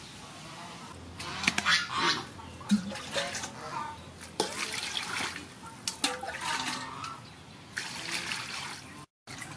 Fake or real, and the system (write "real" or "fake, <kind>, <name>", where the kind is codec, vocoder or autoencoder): real